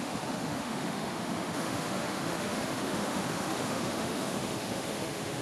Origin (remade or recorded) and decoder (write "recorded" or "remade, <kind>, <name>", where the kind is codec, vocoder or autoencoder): remade, autoencoder, DAC-VAE